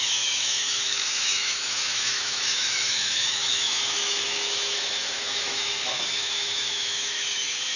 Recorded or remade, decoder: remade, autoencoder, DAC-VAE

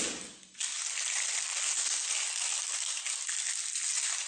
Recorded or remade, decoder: recorded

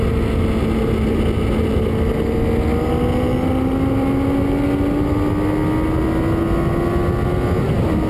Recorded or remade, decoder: recorded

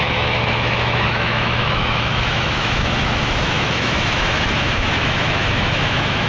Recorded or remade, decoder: remade, autoencoder, DAC-VAE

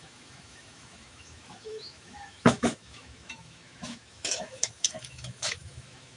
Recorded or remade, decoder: remade, autoencoder, DAC-VAE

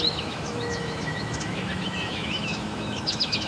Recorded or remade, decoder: remade, autoencoder, DAC-VAE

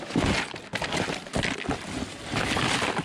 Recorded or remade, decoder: recorded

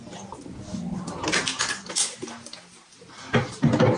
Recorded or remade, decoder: recorded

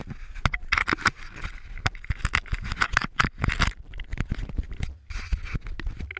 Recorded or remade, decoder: recorded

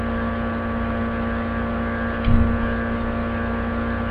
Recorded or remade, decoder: recorded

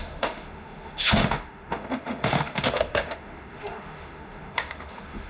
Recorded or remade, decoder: remade, autoencoder, DAC-VAE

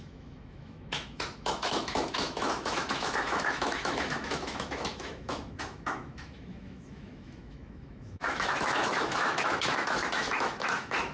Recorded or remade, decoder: remade, autoencoder, DAC-VAE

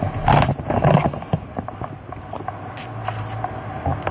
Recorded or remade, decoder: recorded